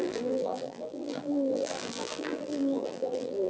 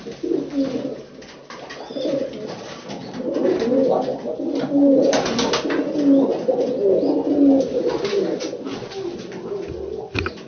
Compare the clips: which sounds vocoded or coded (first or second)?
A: first